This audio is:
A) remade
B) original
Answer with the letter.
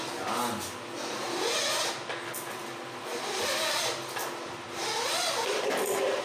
B